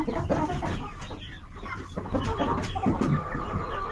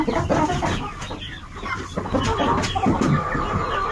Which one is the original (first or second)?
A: second